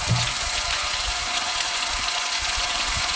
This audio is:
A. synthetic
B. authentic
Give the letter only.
A